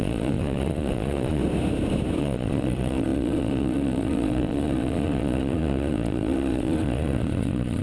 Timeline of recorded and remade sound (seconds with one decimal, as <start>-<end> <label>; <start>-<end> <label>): 0.0-1.4 remade; 1.4-2.2 recorded; 2.2-7.8 remade

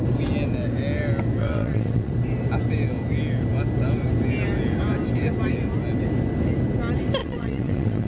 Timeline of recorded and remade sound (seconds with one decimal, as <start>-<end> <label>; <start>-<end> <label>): 0.0-1.4 recorded; 1.4-2.1 remade; 2.1-7.2 recorded; 7.2-8.1 remade